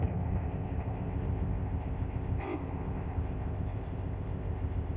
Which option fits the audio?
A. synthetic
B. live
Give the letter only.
A